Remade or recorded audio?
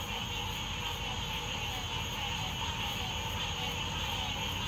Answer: recorded